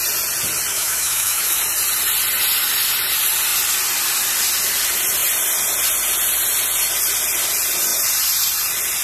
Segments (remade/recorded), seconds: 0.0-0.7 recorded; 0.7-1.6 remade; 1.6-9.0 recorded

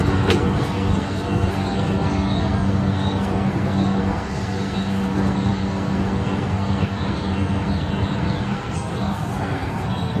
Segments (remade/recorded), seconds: 0.0-10.2 remade

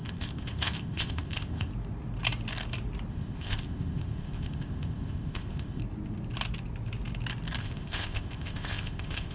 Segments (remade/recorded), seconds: 0.0-1.7 remade; 1.7-3.1 recorded; 3.1-5.8 remade; 5.8-7.6 recorded; 7.6-9.3 remade

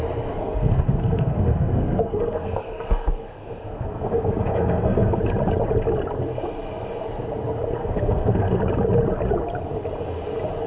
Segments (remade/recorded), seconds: 0.0-0.4 recorded; 0.4-5.2 remade; 5.2-7.8 recorded; 7.8-8.6 remade; 8.6-10.7 recorded

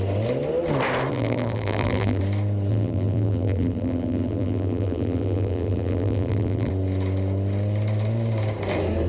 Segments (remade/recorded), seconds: 0.0-1.1 recorded; 1.1-2.2 remade; 2.2-2.7 recorded; 2.7-6.7 remade; 6.7-9.1 recorded